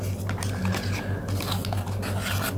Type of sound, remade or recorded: recorded